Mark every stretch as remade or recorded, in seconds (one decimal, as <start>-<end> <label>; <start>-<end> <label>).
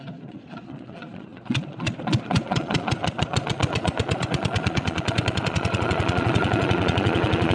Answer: 0.0-7.5 remade